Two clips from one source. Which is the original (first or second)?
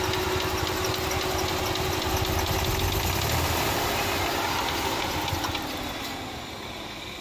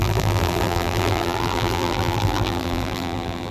first